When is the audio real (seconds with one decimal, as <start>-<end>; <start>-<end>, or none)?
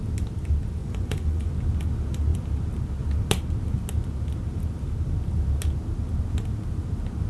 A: 0.0-0.8; 1.5-7.3